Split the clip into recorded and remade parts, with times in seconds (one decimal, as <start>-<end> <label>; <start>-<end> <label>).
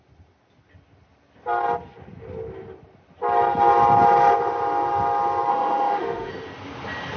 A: 0.0-5.5 recorded; 5.5-6.3 remade; 6.3-7.2 recorded